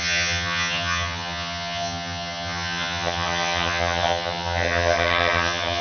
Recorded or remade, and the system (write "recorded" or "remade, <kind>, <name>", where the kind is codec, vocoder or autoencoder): remade, vocoder, HiFi-GAN